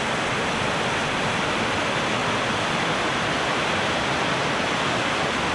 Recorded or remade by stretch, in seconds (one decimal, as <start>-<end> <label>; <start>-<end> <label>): 0.0-5.5 recorded